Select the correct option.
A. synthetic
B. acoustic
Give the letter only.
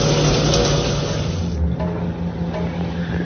B